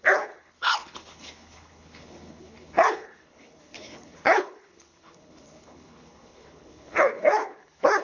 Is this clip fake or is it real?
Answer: fake